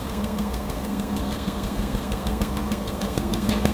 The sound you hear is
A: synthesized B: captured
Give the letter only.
A